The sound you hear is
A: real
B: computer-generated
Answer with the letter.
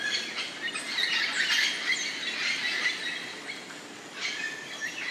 A